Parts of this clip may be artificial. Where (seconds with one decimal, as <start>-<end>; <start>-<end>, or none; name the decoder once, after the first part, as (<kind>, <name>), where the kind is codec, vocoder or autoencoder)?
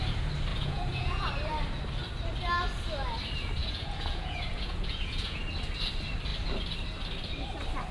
0.5-1.3 (vocoder, Vocos); 3.6-5.4